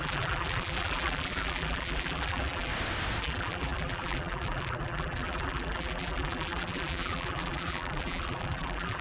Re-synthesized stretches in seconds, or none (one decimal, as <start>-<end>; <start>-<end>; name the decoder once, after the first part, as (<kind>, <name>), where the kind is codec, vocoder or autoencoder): 0.0-2.7 (vocoder, BigVGAN v2); 3.2-9.0